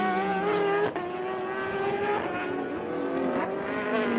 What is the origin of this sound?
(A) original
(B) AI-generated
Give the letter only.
A